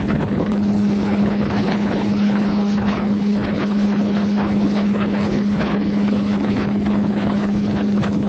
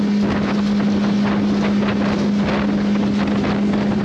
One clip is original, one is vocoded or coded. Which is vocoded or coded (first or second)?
first